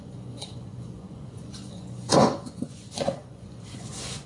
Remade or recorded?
remade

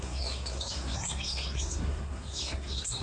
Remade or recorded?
remade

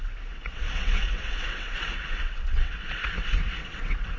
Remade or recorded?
remade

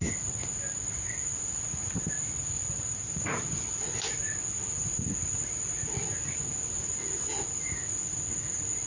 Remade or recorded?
recorded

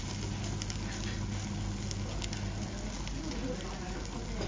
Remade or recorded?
recorded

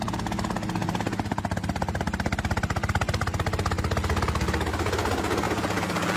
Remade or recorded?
recorded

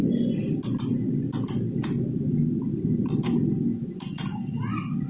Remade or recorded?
recorded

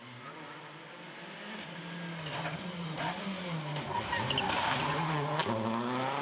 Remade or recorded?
recorded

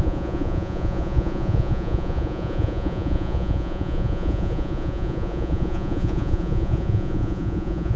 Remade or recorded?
remade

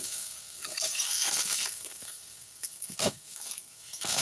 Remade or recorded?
remade